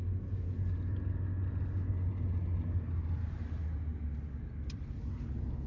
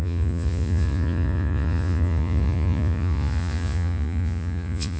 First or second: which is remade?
second